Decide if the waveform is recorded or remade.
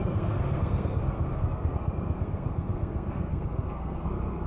remade